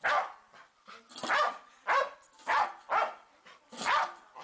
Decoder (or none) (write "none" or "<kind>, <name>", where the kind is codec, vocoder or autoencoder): none